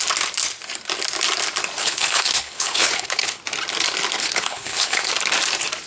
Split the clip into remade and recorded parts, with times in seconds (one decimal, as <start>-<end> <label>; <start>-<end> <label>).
0.0-1.8 recorded; 1.8-3.4 remade; 3.4-4.2 recorded; 4.2-5.1 remade; 5.1-5.9 recorded